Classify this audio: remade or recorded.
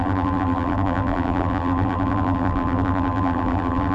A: remade